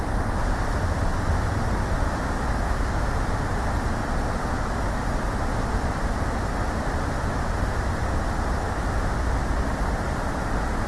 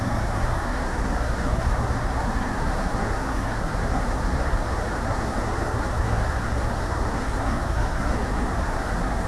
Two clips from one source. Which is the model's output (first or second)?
second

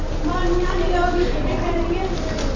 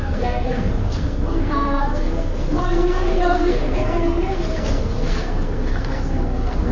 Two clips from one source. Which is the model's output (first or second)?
second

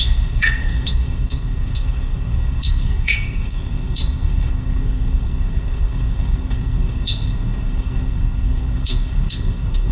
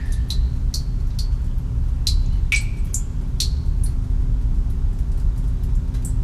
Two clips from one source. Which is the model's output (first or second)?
first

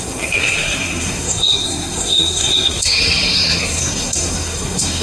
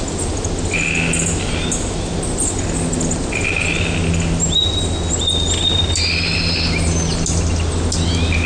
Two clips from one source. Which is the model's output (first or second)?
first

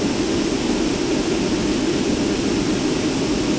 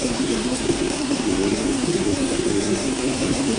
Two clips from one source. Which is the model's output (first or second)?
second